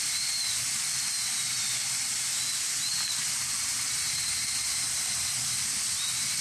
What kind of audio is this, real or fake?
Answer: real